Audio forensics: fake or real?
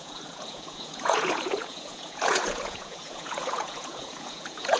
fake